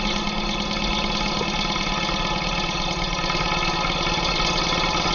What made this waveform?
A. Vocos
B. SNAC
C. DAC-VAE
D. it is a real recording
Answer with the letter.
D